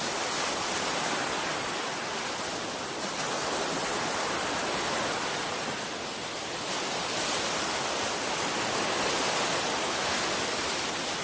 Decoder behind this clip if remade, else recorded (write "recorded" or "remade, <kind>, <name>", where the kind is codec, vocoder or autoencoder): recorded